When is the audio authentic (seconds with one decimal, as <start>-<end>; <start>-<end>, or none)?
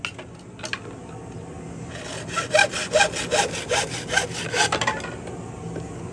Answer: 0.0-6.1